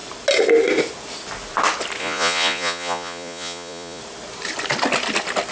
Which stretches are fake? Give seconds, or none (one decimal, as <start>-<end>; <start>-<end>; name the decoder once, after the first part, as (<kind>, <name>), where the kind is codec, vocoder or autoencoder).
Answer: 2.0-4.0 (vocoder, Vocos)